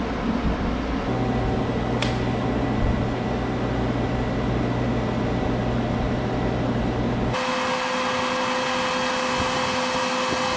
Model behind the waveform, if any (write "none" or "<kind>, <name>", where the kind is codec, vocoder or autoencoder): none